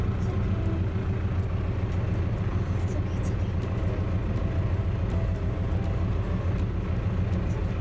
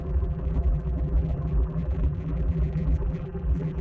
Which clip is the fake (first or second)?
second